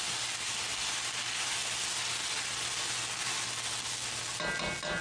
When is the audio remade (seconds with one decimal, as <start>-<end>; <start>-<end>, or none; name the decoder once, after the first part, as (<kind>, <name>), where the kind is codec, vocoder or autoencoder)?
none